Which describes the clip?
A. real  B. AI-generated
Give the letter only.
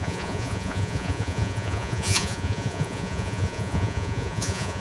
B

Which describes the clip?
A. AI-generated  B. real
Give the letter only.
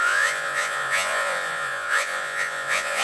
A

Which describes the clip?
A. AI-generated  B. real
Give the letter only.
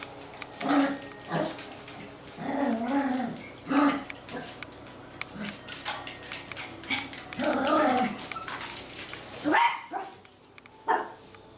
B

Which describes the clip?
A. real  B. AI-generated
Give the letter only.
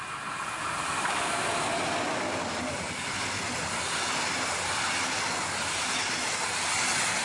A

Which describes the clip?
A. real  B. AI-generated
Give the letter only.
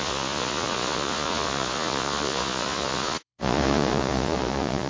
B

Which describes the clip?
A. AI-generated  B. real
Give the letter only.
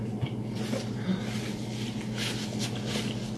B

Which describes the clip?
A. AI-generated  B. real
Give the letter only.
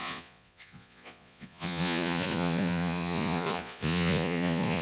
A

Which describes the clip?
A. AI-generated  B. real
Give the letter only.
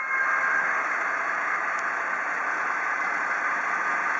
B